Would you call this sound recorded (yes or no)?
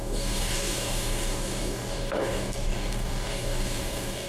no